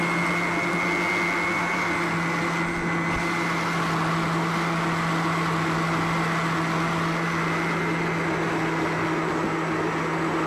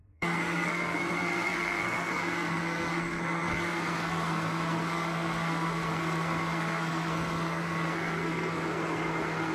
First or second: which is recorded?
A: first